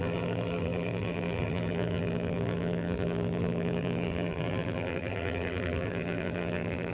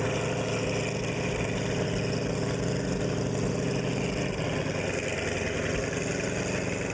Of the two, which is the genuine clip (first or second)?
second